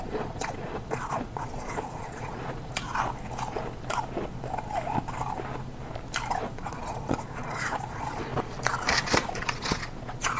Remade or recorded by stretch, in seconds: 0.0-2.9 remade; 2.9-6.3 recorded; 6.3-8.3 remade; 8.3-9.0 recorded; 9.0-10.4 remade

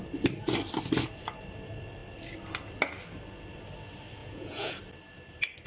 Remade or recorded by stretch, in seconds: 0.0-4.2 recorded; 4.2-4.8 remade; 4.8-5.7 recorded

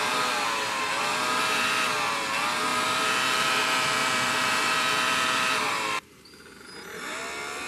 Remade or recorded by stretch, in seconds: 0.0-1.1 recorded; 1.1-1.7 remade; 1.7-2.7 recorded; 2.7-6.5 remade; 6.5-7.7 recorded

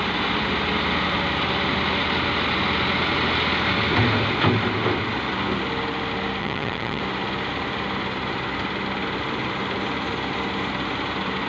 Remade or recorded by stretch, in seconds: 0.0-6.4 recorded; 6.4-7.0 remade; 7.0-11.5 recorded

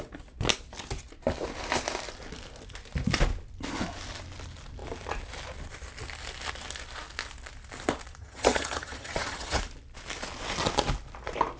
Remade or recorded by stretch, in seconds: 0.0-8.2 recorded; 8.2-9.6 remade; 9.6-11.6 recorded

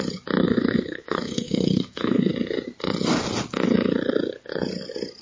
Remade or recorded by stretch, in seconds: 0.0-0.4 recorded; 0.4-2.3 remade; 2.3-5.2 recorded

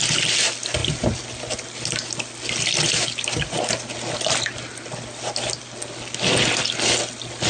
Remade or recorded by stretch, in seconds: 0.0-7.5 recorded

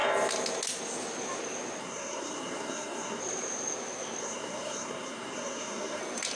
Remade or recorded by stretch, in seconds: 0.0-1.8 recorded; 1.8-3.2 remade; 3.2-4.2 recorded; 4.2-6.0 remade; 6.0-6.4 recorded